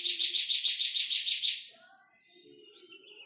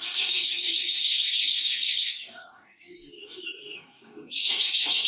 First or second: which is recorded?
first